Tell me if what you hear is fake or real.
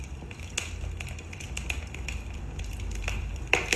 fake